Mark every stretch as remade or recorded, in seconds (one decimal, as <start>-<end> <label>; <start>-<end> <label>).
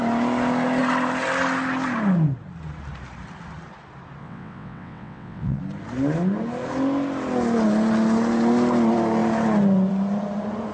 0.0-4.2 recorded; 4.2-5.6 remade; 5.6-10.7 recorded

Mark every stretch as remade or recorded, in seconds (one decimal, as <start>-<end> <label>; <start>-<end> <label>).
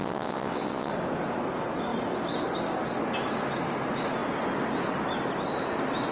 0.0-0.9 remade; 0.9-6.1 recorded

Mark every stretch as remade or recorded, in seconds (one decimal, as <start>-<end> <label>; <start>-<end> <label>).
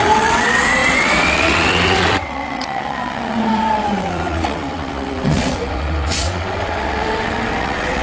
0.0-8.0 remade